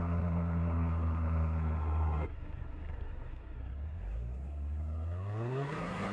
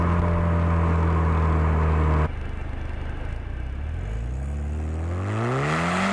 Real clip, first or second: second